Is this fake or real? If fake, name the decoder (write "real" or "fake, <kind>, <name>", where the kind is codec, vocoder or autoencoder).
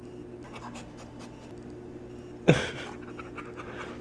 real